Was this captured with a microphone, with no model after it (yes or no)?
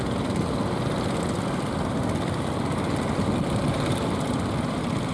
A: yes